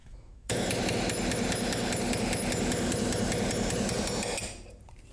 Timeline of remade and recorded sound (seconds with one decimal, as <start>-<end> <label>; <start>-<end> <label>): 0.0-0.8 remade; 0.8-5.1 recorded